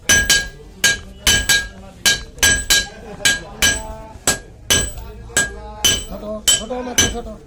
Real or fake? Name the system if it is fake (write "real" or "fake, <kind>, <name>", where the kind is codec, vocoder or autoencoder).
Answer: real